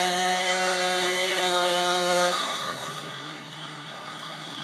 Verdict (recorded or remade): remade